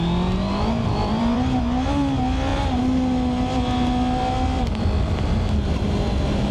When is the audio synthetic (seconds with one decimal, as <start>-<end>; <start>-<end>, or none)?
1.0-1.6